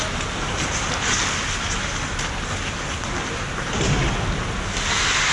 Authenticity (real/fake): real